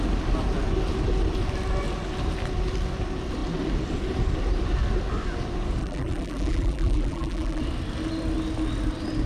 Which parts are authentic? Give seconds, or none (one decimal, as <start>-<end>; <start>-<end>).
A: 0.0-5.8; 7.6-9.3